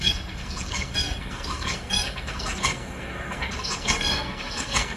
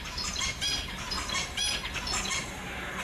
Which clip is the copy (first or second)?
first